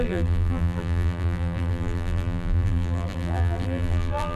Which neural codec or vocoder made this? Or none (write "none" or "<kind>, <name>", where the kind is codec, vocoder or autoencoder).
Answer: vocoder, BigVGAN v2